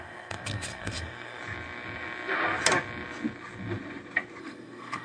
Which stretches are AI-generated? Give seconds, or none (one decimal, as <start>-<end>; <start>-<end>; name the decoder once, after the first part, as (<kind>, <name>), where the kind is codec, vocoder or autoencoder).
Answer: 0.0-1.4 (codec, SNAC); 4.4-5.0